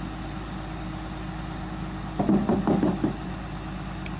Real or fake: real